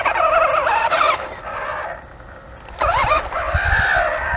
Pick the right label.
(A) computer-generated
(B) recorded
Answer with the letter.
B